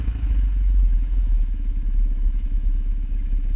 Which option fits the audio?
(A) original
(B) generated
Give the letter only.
B